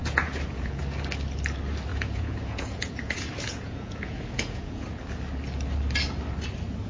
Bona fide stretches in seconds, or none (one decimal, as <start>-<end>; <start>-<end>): 0.8-1.9; 5.0-6.9